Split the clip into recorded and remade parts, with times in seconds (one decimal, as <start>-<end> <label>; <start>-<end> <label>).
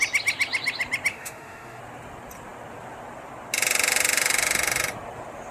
0.0-1.1 recorded; 1.1-1.8 remade; 1.8-5.5 recorded